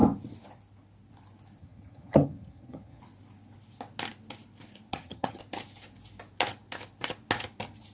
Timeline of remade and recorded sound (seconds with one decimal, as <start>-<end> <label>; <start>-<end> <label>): 0.0-1.6 recorded; 1.6-3.0 remade; 3.0-4.9 recorded; 4.9-5.4 remade; 5.4-7.9 recorded